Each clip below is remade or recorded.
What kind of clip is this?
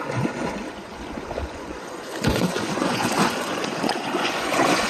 remade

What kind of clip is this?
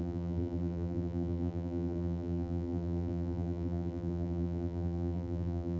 remade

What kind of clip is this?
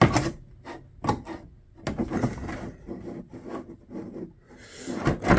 recorded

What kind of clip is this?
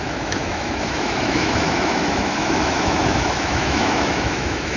remade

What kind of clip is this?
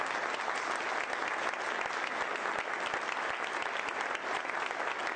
recorded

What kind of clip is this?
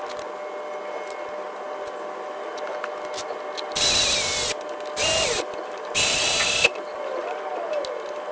recorded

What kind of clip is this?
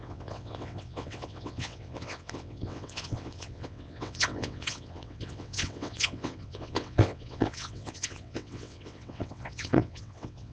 remade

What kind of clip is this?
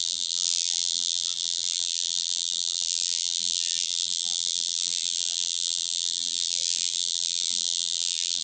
remade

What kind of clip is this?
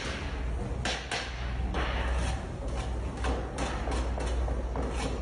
recorded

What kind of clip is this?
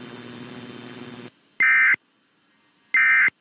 recorded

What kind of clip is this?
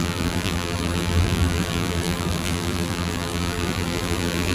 remade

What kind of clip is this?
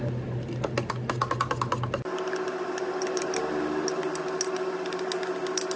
recorded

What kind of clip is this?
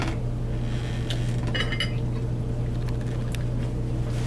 recorded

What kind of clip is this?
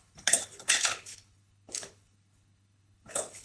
remade